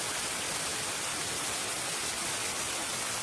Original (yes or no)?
yes